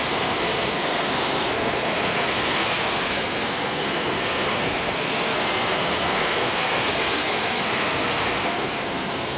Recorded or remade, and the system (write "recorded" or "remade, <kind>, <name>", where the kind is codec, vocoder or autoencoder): remade, codec, SNAC